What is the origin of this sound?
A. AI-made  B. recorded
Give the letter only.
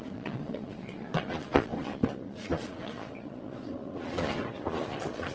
A